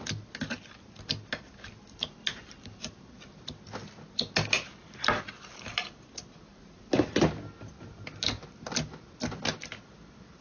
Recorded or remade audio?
recorded